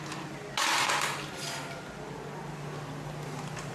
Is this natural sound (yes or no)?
yes